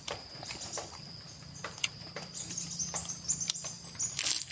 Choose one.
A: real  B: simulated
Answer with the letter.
A